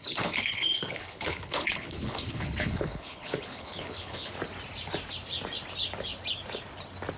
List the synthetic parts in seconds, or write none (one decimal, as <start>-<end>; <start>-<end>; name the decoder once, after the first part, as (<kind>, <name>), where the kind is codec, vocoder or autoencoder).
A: 0.0-4.3 (codec, HILCodec)